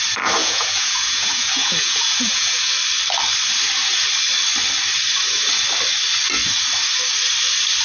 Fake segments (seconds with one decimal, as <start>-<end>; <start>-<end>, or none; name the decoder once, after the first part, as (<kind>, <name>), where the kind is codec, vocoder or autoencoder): 0.4-2.7 (vocoder, Vocos)